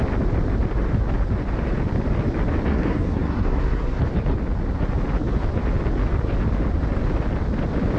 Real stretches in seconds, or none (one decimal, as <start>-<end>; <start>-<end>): 0.0-2.7; 4.0-8.0